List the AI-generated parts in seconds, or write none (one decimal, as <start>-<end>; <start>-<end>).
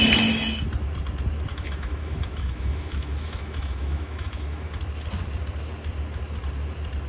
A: 1.5-4.8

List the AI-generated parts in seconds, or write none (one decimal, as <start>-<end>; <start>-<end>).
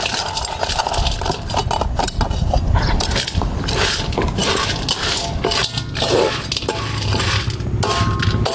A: none